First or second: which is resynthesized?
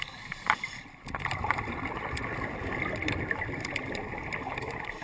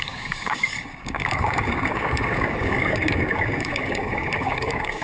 second